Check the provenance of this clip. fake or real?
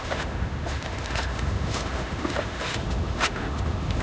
fake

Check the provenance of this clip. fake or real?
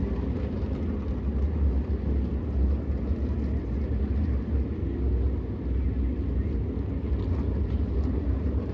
real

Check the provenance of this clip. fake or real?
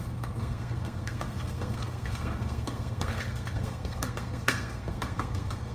fake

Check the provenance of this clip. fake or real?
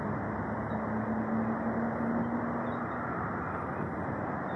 real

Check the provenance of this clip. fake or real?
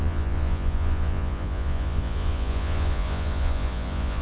fake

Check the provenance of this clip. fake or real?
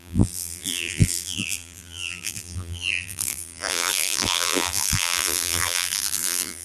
fake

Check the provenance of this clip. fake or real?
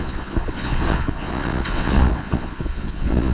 fake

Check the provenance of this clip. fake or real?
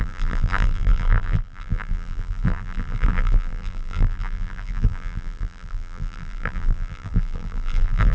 fake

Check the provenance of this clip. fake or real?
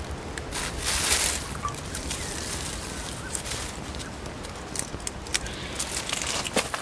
real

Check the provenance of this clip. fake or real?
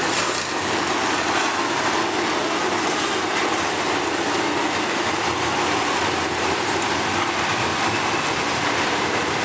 real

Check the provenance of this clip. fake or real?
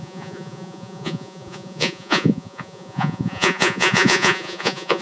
fake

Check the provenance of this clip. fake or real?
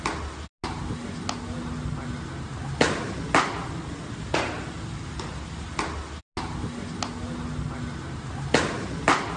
real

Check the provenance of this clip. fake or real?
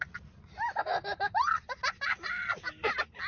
real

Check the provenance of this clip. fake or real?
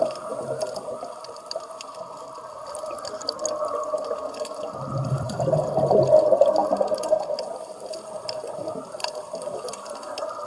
real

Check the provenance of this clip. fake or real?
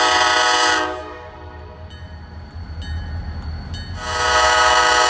real